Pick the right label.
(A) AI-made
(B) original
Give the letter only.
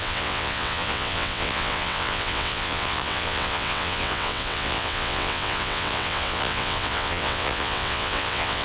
A